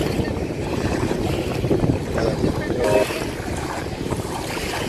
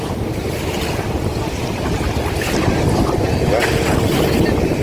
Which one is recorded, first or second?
second